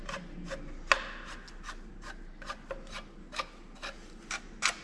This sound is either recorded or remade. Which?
recorded